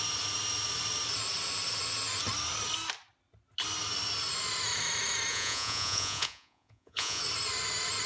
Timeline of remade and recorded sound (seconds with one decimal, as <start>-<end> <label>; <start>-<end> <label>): 0.0-5.3 recorded; 5.3-7.2 remade; 7.2-8.1 recorded